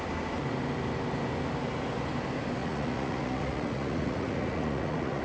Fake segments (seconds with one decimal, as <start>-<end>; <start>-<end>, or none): 2.6-5.2